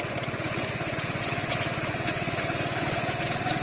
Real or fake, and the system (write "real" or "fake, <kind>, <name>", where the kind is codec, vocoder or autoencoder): fake, vocoder, Vocos